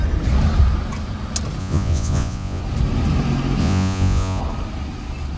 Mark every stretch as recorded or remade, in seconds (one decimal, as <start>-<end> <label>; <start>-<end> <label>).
0.0-1.6 recorded; 1.6-2.6 remade; 2.6-3.6 recorded; 3.6-4.4 remade; 4.4-5.4 recorded